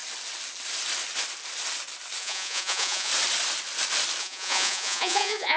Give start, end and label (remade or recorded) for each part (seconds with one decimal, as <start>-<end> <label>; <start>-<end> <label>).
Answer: 0.0-2.2 recorded; 2.2-3.1 remade; 3.1-4.2 recorded; 4.2-5.6 remade